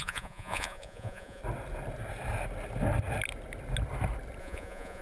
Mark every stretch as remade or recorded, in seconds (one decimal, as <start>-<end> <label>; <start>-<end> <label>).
0.0-1.4 remade; 1.4-4.4 recorded; 4.4-5.0 remade